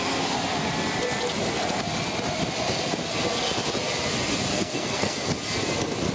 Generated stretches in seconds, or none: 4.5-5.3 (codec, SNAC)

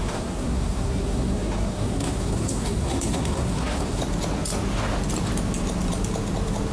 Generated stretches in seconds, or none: 0.0-4.0 (codec, SNAC)

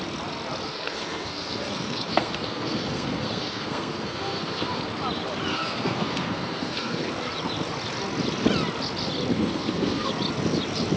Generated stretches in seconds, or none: 0.7-4.8 (codec, SNAC); 5.5-7.1; 9.3-10.1

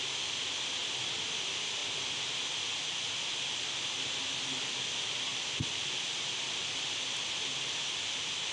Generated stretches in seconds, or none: none